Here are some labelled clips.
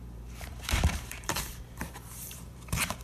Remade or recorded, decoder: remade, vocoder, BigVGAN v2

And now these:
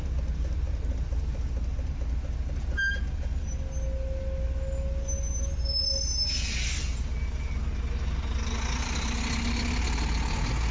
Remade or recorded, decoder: recorded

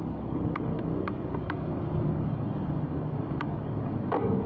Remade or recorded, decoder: remade, codec, DAC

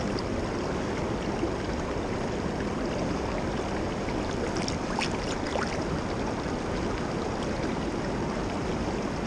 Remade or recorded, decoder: recorded